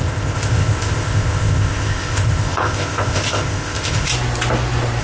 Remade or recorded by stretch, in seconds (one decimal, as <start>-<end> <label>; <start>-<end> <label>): 0.0-4.1 remade; 4.1-5.0 recorded